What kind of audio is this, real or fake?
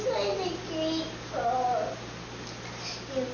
real